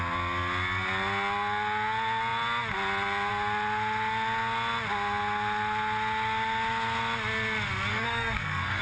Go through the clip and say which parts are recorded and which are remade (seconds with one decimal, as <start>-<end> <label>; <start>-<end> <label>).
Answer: 0.0-7.9 recorded; 7.9-8.8 remade